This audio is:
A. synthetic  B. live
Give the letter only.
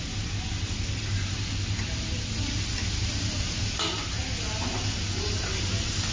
B